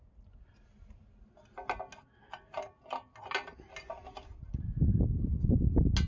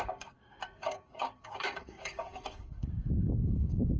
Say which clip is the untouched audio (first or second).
first